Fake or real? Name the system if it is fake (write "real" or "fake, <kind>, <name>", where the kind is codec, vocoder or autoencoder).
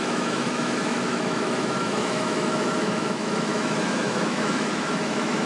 fake, autoencoder, DAC-VAE